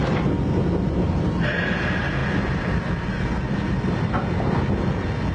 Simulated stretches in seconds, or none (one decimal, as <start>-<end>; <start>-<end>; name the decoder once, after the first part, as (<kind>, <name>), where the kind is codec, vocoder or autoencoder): none